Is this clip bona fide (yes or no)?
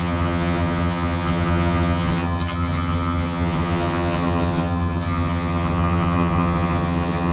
no